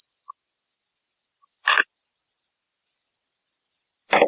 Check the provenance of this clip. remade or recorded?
recorded